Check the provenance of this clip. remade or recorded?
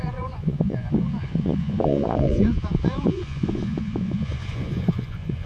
remade